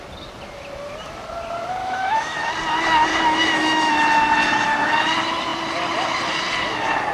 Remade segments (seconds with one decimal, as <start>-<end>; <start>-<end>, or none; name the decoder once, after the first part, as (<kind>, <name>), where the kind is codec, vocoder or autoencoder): 1.8-2.5 (autoencoder, DAC-VAE); 3.1-3.9